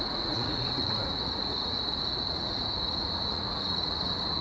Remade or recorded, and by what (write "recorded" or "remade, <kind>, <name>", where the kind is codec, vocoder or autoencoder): remade, vocoder, Vocos